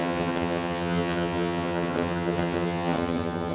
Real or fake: fake